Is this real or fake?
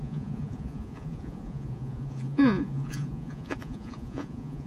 fake